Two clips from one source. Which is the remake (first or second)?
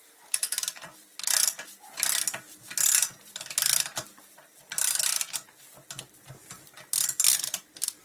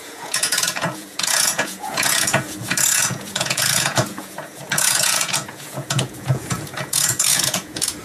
second